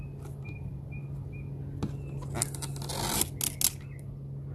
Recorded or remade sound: recorded